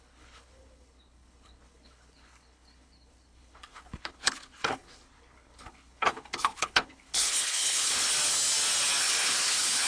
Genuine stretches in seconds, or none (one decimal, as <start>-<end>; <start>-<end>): 8.1-9.0